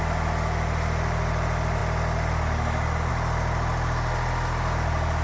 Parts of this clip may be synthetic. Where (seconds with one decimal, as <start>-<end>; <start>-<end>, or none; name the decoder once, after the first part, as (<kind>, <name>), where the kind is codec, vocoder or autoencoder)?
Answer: none